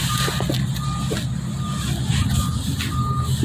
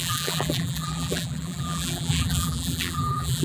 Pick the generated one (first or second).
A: second